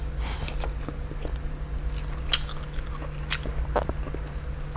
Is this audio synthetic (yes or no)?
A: no